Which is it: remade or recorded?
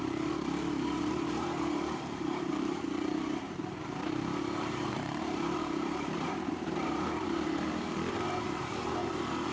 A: remade